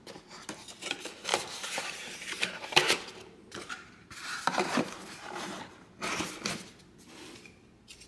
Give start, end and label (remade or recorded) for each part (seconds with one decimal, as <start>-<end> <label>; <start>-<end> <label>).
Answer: 0.0-1.3 recorded; 1.3-5.6 remade; 5.6-8.1 recorded